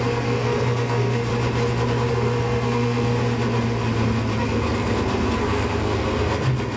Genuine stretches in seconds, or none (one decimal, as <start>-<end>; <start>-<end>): 1.3-2.1; 3.1-4.4